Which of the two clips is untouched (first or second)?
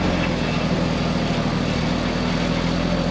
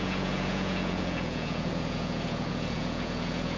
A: first